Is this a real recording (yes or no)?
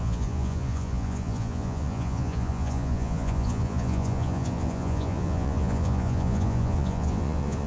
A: no